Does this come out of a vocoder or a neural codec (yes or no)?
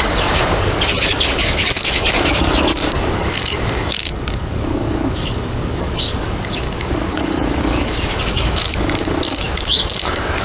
yes